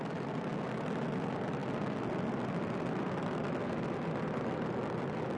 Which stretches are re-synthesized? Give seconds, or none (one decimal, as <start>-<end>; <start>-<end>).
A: none